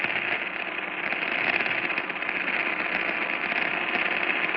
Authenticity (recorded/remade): recorded